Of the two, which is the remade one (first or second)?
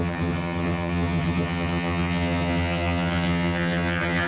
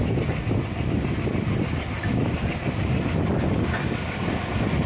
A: first